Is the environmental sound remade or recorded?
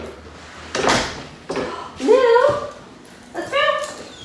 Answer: recorded